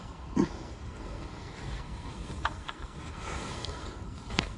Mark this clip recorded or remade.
remade